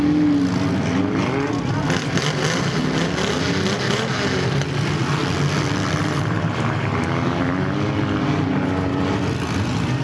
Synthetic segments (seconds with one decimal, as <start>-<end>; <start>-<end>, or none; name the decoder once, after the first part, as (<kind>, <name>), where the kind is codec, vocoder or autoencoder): 6.0-7.0 (vocoder, BigVGAN v2)